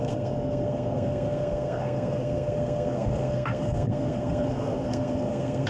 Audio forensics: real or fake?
fake